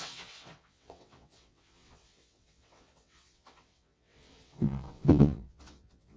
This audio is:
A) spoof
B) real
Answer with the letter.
A